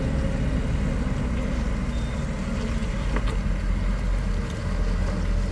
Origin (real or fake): real